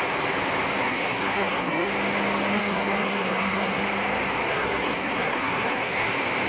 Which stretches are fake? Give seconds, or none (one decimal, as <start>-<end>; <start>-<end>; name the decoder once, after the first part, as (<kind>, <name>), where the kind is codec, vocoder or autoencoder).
0.8-1.9 (codec, SNAC); 2.5-3.8; 4.5-6.1